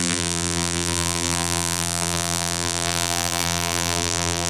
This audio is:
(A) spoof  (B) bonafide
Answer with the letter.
A